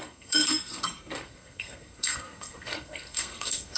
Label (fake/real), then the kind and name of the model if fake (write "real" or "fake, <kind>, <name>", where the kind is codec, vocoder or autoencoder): fake, codec, SNAC